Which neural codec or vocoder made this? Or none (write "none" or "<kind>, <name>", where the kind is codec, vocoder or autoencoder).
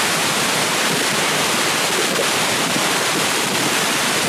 none